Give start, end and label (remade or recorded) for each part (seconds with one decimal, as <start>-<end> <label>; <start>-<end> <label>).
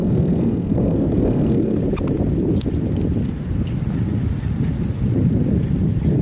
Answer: 0.0-1.8 remade; 1.8-6.2 recorded